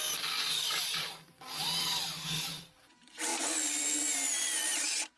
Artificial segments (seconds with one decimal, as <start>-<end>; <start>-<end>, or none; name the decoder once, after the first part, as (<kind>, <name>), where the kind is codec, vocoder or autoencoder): 0.5-2.6 (codec, DAC)